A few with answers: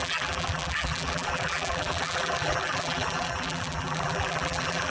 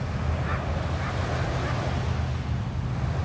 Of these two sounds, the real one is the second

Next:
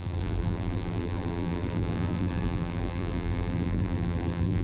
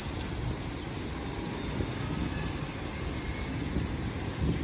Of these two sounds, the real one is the second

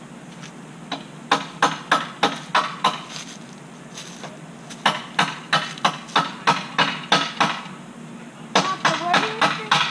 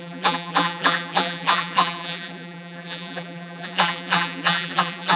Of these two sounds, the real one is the first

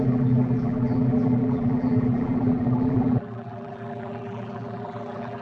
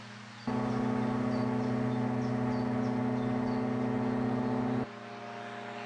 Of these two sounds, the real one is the second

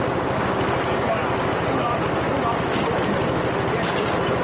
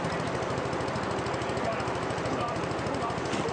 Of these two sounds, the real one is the first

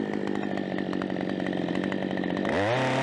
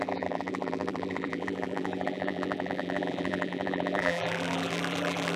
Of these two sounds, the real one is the first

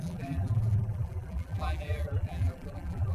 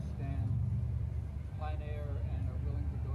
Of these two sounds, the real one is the second